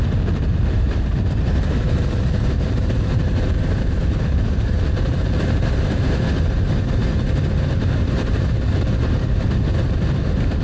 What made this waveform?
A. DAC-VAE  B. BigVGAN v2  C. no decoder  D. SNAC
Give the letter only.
B